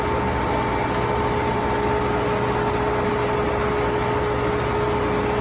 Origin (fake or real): real